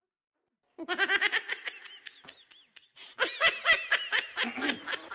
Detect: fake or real real